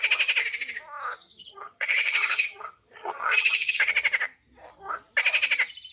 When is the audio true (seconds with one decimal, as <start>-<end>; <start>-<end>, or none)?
0.0-1.4; 3.9-5.9